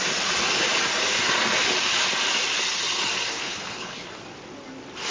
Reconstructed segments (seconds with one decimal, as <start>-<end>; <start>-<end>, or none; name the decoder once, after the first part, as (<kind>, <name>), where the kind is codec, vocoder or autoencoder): 3.3-4.1 (codec, HILCodec)